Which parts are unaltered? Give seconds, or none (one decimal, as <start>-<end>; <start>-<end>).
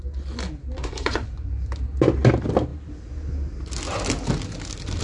0.0-0.8; 1.5-5.0